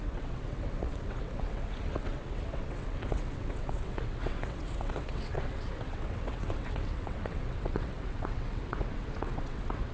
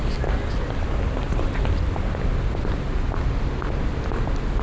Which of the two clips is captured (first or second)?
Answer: second